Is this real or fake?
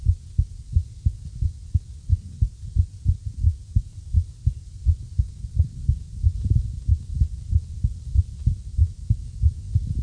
real